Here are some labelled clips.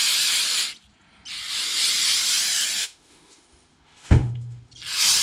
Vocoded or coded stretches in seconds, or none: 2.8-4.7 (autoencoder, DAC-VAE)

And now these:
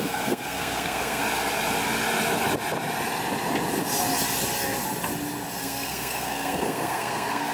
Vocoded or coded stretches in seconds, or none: 0.0-1.2 (codec, SNAC); 5.6-7.5

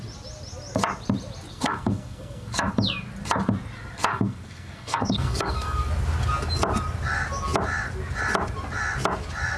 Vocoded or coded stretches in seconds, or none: 1.5-2.7 (codec, SNAC); 4.1-5.9

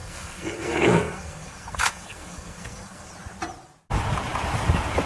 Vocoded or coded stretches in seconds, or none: 0.0-3.1 (codec, SNAC)

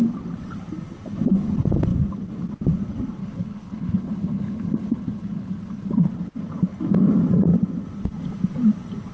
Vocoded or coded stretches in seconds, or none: 3.2-6.1 (codec, HILCodec)

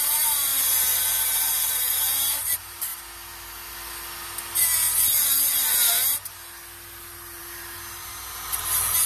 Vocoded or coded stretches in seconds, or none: 0.0-0.5 (vocoder, BigVGAN v2); 1.2-2.9; 7.0-9.1

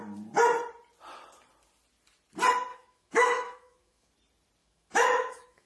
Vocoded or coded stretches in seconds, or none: 2.7-4.1 (autoencoder, DAC-VAE); 4.6-5.7

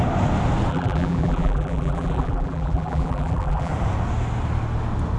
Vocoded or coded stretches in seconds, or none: 0.7-3.7 (vocoder, BigVGAN v2)